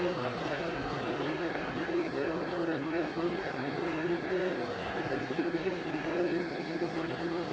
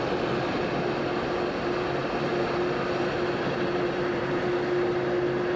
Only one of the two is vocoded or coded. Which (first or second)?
first